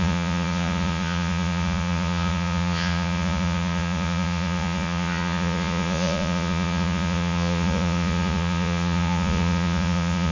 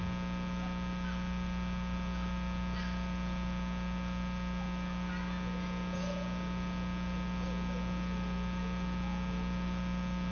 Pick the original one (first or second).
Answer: second